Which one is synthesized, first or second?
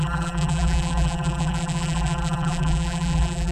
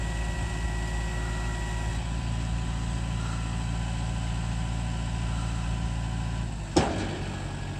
first